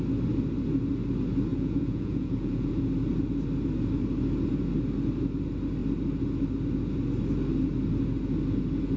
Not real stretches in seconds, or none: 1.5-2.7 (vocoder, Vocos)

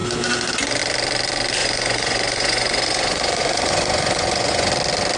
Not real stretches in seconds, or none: 1.6-4.7 (vocoder, Vocos)

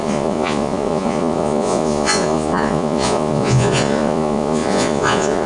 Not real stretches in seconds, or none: 0.0-5.5 (vocoder, Vocos)